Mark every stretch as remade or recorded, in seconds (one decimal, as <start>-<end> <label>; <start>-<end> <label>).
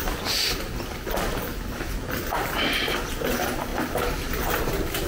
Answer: 0.0-5.1 recorded